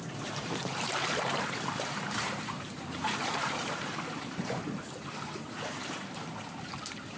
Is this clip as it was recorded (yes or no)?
no